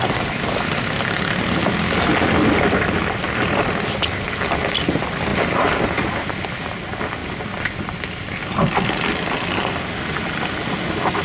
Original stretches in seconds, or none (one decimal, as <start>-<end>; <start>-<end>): 0.0-11.2